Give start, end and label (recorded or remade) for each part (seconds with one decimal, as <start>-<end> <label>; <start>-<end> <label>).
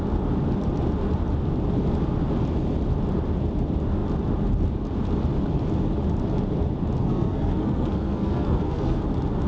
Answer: 0.0-7.0 recorded; 7.0-9.0 remade; 9.0-9.5 recorded